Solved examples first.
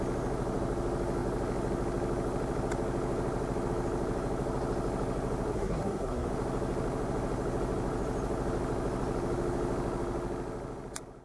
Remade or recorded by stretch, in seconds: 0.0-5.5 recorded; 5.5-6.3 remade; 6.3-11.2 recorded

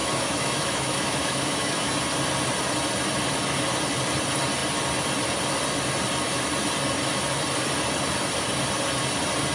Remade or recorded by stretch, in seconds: 0.0-1.9 remade; 1.9-9.5 recorded

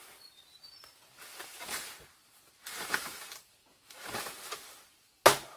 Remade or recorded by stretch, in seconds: 0.0-1.5 recorded; 1.5-4.9 remade; 4.9-5.6 recorded

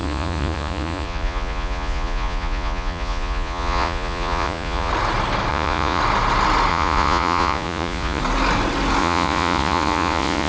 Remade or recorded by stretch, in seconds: 0.0-4.9 remade; 4.9-5.5 recorded; 5.5-6.0 remade; 6.0-6.7 recorded; 6.7-8.2 remade; 8.2-9.0 recorded; 9.0-10.5 remade

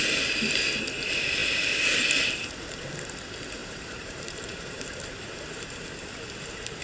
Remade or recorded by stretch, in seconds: 0.0-3.6 recorded; 3.6-6.8 remade

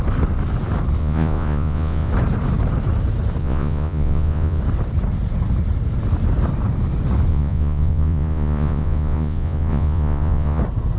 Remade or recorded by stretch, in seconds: 0.0-1.0 recorded; 1.0-2.1 remade; 2.1-3.4 recorded; 3.4-4.6 remade; 4.6-7.3 recorded; 7.3-10.6 remade; 10.6-11.0 recorded

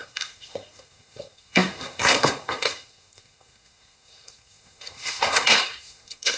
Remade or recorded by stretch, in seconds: 0.0-6.4 remade